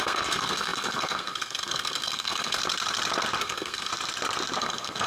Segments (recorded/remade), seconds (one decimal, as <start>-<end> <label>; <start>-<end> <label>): 0.0-2.6 remade; 2.6-3.4 recorded; 3.4-3.9 remade; 3.9-4.6 recorded; 4.6-5.1 remade